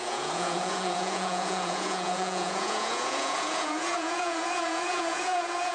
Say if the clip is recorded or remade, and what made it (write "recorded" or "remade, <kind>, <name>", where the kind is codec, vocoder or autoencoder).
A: remade, vocoder, Vocos